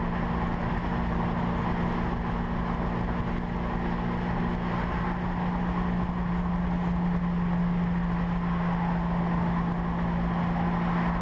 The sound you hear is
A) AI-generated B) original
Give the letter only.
B